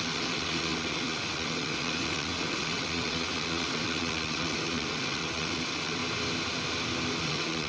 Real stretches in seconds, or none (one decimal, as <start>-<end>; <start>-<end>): 6.0-7.2